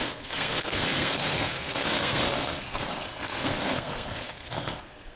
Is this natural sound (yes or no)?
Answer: no